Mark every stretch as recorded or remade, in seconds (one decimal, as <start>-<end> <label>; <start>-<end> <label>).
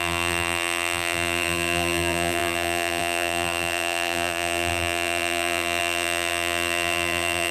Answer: 0.0-7.5 remade